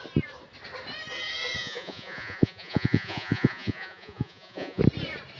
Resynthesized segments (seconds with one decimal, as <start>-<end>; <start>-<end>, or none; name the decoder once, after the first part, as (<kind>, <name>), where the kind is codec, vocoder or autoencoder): 1.6-4.8 (vocoder, Vocos)